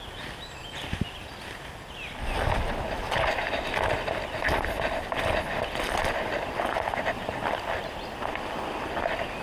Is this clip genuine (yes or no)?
yes